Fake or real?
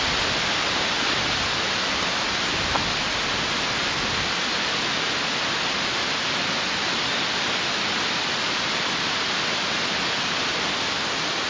real